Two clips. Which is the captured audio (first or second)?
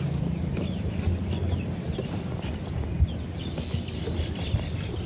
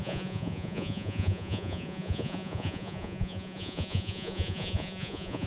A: first